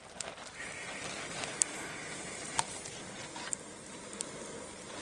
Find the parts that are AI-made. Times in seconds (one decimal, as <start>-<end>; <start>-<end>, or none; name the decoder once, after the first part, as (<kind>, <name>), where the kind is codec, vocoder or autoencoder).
3.2-4.1 (vocoder, BigVGAN v2)